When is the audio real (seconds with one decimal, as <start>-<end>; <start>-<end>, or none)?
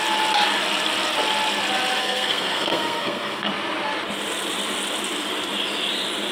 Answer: 0.0-2.0; 3.5-6.3